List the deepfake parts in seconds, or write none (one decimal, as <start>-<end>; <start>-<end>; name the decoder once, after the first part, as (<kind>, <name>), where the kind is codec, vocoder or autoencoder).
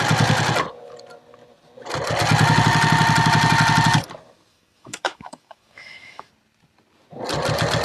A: 4.5-6.3 (autoencoder, DAC-VAE)